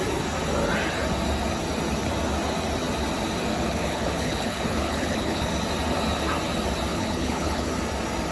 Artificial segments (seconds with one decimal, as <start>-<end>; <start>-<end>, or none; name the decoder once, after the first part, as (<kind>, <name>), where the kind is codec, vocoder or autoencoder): 3.5-5.5 (codec, HILCodec); 6.9-7.7